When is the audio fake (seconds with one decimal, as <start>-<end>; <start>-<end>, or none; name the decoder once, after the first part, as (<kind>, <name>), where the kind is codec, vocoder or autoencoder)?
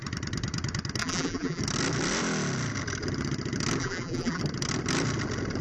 1.0-1.6 (vocoder, BigVGAN v2); 3.8-4.4